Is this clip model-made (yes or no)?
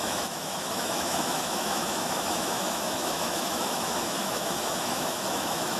yes